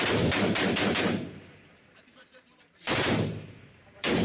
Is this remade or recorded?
remade